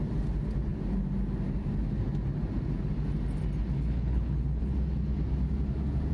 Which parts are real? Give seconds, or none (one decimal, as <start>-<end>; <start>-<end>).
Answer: 0.0-3.7; 4.7-6.1